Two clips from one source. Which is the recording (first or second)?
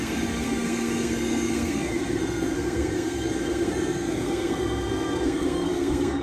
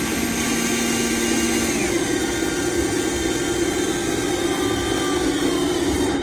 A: second